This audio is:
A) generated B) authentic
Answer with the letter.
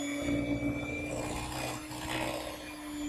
B